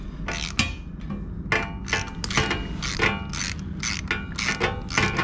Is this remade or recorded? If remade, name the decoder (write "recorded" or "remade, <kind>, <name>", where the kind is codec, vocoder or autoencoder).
recorded